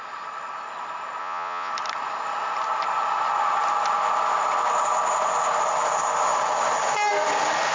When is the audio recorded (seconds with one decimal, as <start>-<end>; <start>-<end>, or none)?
0.0-1.2; 1.7-7.7